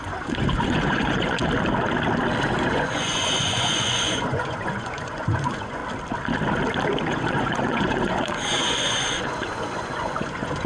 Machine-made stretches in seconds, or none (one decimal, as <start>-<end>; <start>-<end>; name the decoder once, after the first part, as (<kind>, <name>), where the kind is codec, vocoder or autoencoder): 0.0-1.4 (vocoder, Vocos); 2.4-5.8; 7.1-10.7